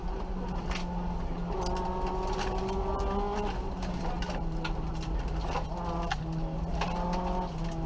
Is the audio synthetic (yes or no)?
no